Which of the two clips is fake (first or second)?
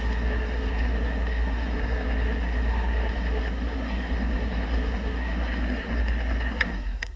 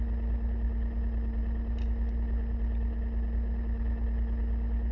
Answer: first